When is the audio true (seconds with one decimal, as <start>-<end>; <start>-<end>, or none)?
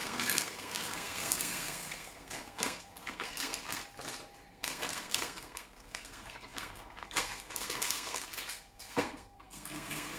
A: 3.8-4.5